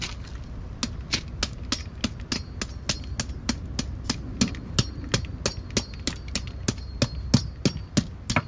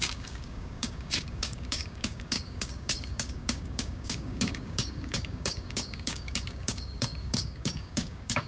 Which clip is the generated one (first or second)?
second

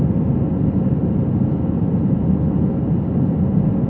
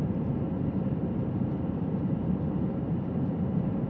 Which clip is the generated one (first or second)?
second